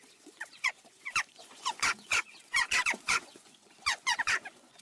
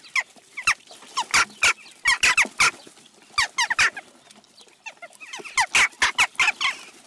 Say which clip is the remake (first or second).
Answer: first